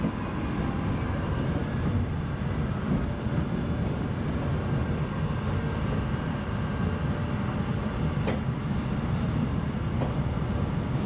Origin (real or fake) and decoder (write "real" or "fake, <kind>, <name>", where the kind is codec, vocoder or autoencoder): real